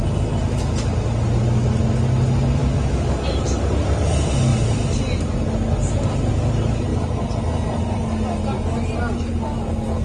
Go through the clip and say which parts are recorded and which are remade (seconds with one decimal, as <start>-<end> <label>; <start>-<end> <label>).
0.0-2.6 recorded; 2.6-3.2 remade; 3.2-10.0 recorded